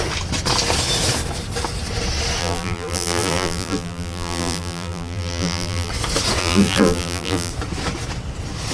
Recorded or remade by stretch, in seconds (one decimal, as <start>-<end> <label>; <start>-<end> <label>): 0.0-2.4 recorded; 2.4-5.9 remade; 5.9-6.4 recorded; 6.4-7.5 remade; 7.5-8.7 recorded